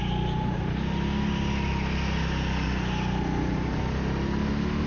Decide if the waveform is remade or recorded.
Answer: recorded